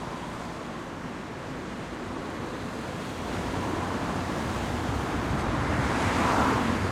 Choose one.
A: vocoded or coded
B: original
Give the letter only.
A